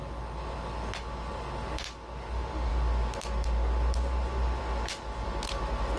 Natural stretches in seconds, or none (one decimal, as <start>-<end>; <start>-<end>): 0.0-6.0